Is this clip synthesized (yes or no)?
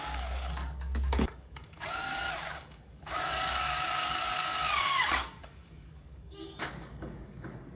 yes